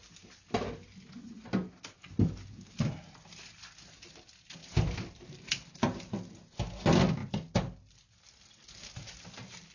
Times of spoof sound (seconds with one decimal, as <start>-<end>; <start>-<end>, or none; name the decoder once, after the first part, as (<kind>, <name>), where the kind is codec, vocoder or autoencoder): none